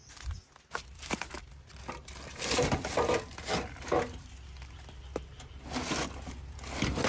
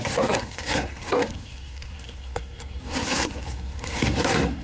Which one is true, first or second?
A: first